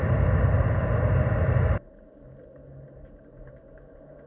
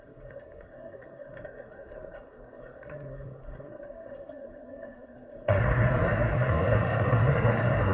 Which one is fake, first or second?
second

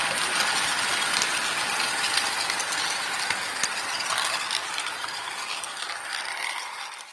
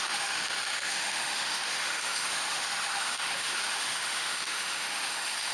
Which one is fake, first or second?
second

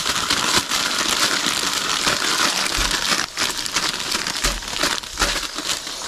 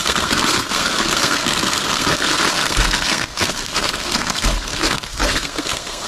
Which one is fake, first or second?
second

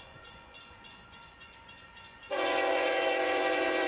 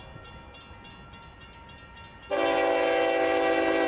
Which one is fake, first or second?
first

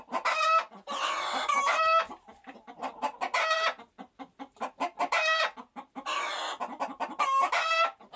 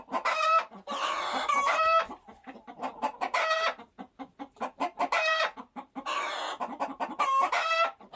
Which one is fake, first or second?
second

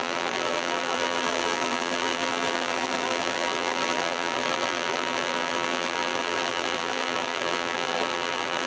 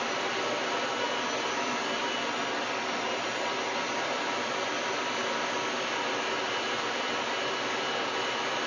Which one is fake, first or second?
first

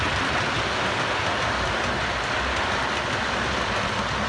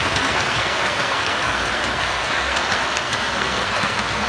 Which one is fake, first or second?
second